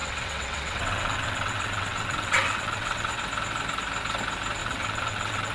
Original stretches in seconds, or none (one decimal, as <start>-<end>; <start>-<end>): 3.2-4.6